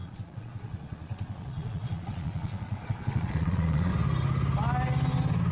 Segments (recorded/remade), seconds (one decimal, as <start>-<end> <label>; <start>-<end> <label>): 0.0-3.9 remade; 3.9-5.5 recorded

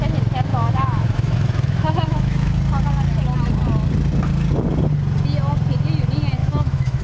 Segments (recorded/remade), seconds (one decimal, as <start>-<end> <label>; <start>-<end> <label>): 0.0-0.5 recorded; 0.5-2.6 remade; 2.6-6.4 recorded; 6.4-7.0 remade

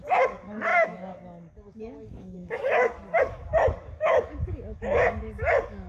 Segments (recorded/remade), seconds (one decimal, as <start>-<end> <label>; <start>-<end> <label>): 0.0-5.9 remade

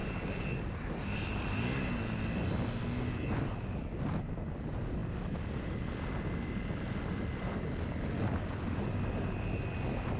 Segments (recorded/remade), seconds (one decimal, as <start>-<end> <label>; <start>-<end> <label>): 0.0-8.2 recorded; 8.2-8.8 remade; 8.8-10.2 recorded

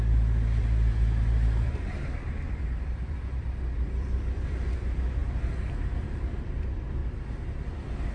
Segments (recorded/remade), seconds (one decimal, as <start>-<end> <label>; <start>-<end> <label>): 0.0-7.0 remade; 7.0-7.6 recorded; 7.6-8.1 remade

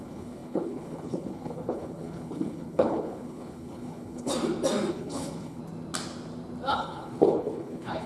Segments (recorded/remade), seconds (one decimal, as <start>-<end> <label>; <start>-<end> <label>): 0.0-4.3 remade; 4.3-4.9 recorded; 4.9-5.6 remade; 5.6-6.7 recorded; 6.7-8.1 remade

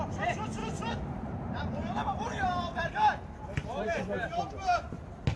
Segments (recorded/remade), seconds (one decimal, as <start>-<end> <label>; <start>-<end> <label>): 0.0-0.6 recorded; 0.6-2.9 remade; 2.9-3.6 recorded; 3.6-5.0 remade; 5.0-5.4 recorded